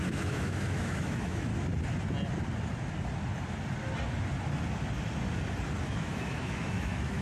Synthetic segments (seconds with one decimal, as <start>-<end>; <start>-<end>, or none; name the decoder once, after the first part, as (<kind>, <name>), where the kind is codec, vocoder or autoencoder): 0.0-1.5 (autoencoder, DAC-VAE); 5.8-7.2